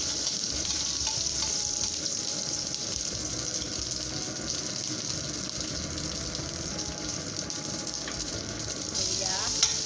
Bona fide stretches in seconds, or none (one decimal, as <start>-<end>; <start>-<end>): 3.7-7.0